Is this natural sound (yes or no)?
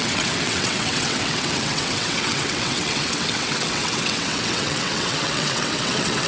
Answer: no